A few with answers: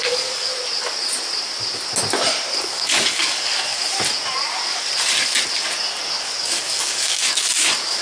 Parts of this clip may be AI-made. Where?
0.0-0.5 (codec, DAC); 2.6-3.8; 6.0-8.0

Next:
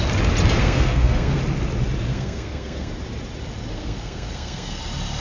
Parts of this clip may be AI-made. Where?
0.6-1.4 (codec, SNAC); 2.1-2.9; 3.7-4.8

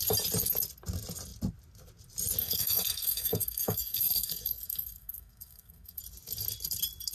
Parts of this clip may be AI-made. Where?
2.4-6.0 (codec, SNAC)

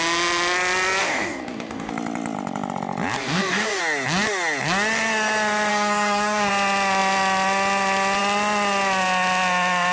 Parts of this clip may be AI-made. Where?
1.0-1.9 (codec, DAC); 3.2-3.8; 5.7-6.5

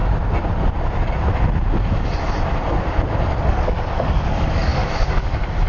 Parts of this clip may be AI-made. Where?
3.4-5.7 (codec, DAC)

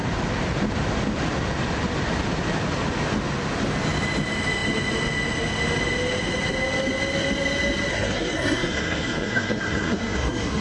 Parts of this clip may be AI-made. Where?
7.9-10.6 (codec, SNAC)

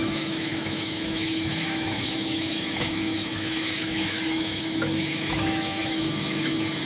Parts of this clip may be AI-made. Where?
0.0-6.9 (autoencoder, DAC-VAE)

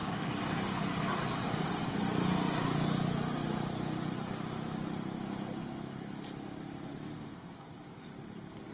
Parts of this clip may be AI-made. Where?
none